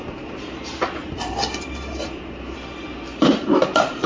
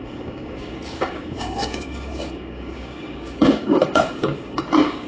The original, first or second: first